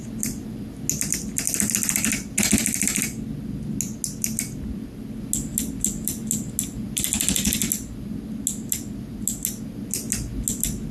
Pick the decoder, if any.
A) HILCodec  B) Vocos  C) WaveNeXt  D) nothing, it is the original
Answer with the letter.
D